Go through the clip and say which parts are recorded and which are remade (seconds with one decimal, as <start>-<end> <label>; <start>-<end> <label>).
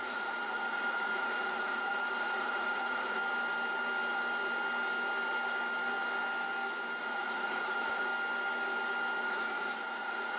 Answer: 0.0-3.2 remade; 3.2-7.0 recorded; 7.0-8.1 remade; 8.1-9.2 recorded; 9.2-10.4 remade